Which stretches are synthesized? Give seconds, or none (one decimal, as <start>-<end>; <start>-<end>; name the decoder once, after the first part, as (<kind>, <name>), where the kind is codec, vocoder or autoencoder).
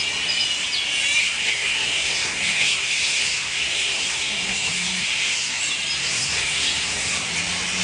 1.2-5.6 (codec, SNAC); 6.0-7.3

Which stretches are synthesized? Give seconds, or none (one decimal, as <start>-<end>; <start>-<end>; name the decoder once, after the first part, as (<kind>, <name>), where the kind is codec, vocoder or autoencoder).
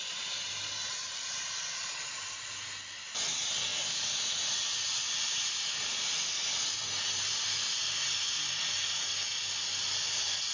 none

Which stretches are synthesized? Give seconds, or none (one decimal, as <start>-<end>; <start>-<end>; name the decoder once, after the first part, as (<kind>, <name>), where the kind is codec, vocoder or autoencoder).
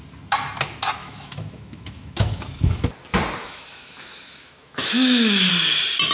1.0-2.9 (autoencoder, DAC-VAE); 3.4-5.5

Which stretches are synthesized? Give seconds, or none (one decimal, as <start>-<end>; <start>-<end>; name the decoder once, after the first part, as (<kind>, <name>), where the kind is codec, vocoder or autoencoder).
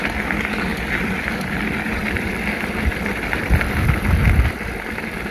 0.7-3.9 (vocoder, BigVGAN v2)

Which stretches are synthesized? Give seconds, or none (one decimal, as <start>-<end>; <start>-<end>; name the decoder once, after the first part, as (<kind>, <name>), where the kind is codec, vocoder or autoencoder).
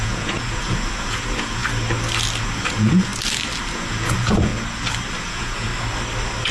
0.0-1.6 (vocoder, Vocos); 2.4-3.1; 3.7-4.5; 5.1-5.7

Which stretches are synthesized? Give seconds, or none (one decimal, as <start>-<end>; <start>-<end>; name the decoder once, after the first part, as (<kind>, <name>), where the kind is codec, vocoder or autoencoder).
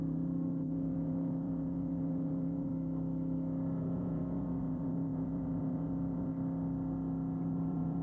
0.0-2.7 (vocoder, Vocos); 3.8-6.3; 7.4-8.0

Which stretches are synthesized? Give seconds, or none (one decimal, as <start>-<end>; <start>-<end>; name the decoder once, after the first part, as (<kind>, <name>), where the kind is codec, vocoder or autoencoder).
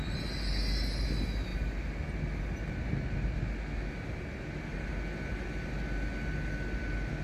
none